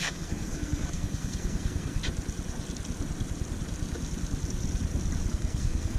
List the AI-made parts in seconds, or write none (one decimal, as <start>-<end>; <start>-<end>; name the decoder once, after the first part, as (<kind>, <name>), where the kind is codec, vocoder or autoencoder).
0.0-2.0 (codec, SNAC); 5.3-6.0